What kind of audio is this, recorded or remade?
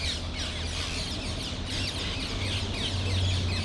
recorded